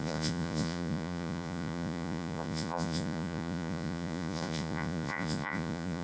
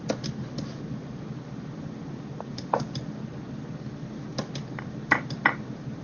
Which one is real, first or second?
second